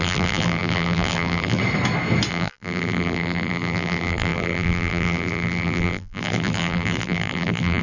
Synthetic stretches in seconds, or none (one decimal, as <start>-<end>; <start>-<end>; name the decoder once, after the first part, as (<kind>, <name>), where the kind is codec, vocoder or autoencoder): 0.0-1.6 (vocoder, BigVGAN v2); 2.3-7.8